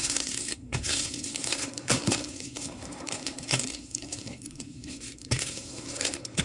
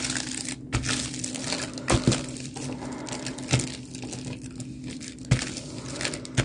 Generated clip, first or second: first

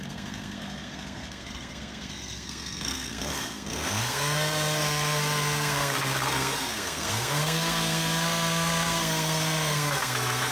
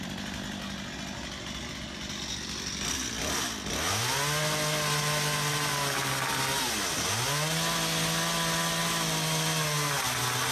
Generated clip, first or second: first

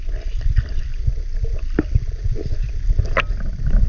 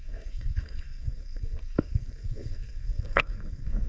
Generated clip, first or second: second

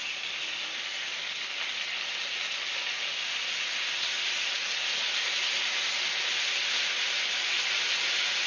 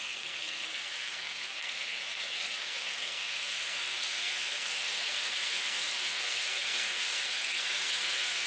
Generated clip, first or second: second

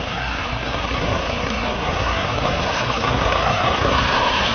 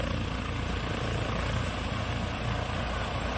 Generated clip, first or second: first